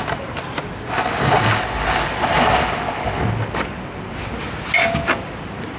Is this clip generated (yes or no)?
no